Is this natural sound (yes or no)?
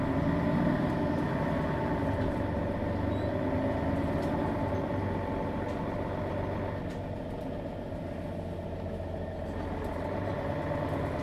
yes